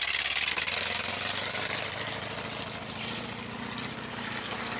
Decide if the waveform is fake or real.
real